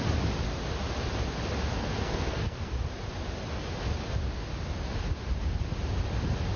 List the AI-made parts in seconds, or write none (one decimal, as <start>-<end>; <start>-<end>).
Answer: 1.7-2.7